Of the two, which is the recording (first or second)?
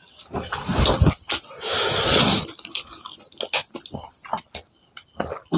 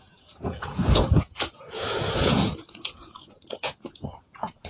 first